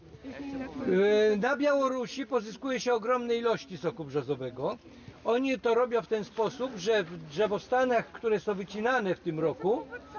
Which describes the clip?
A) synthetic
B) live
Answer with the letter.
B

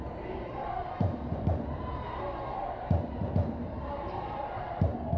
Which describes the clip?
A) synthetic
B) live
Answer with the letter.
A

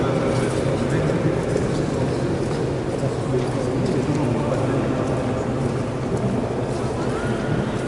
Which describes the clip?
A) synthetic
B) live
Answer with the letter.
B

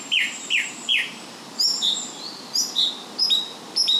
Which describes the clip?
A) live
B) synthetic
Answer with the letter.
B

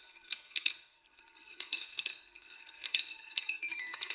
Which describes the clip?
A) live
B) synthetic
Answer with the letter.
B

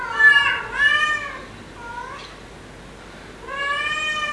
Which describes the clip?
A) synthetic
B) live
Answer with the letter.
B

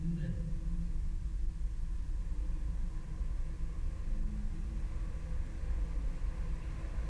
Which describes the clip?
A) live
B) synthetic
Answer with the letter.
A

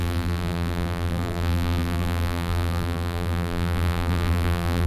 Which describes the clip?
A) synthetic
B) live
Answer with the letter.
A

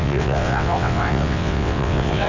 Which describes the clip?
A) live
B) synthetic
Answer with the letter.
B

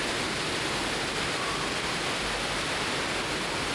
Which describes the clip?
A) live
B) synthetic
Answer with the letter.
A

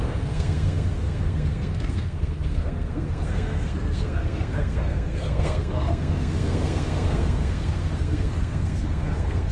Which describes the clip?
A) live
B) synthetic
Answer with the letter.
B